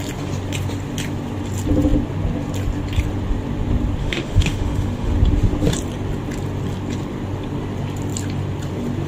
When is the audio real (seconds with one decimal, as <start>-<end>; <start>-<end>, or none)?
0.0-4.0; 5.1-9.1